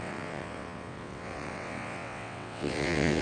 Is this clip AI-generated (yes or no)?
yes